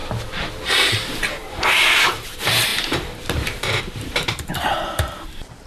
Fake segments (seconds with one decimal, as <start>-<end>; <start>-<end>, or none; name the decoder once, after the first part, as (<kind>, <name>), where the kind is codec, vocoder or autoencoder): 0.6-5.7 (vocoder, BigVGAN v2)